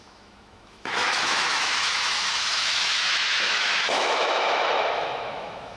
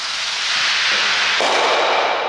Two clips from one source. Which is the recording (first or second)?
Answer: second